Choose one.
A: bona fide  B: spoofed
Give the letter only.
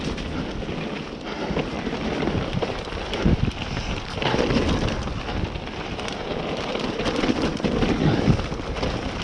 A